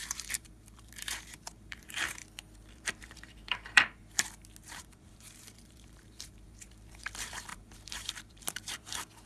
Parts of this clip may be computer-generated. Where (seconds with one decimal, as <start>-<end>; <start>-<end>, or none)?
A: 0.0-2.2; 2.7-4.0; 4.7-9.3